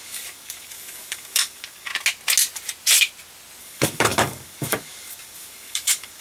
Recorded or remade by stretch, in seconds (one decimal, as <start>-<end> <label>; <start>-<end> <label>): 0.0-1.9 remade; 1.9-3.6 recorded; 3.6-6.2 remade